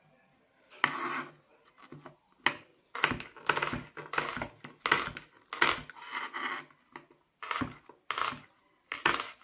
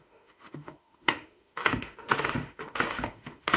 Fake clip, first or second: second